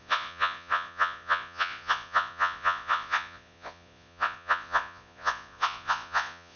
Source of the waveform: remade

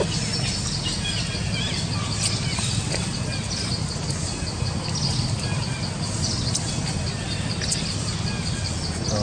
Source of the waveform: recorded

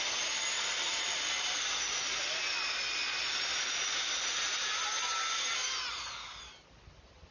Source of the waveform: recorded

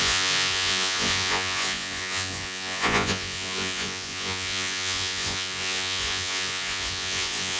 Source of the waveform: remade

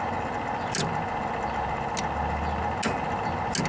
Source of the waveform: recorded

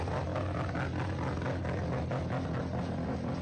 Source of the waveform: recorded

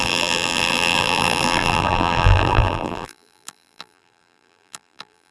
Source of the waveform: remade